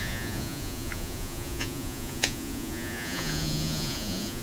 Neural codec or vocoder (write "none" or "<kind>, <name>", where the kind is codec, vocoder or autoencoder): vocoder, Vocos